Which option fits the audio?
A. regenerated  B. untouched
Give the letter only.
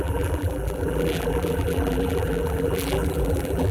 A